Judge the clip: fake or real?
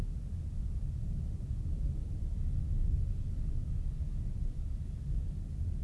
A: real